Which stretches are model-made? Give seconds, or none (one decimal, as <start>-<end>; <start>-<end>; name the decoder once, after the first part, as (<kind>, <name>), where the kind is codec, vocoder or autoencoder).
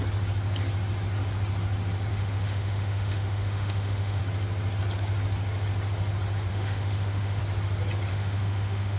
2.1-4.2 (autoencoder, DAC-VAE); 6.5-7.4; 8.1-9.0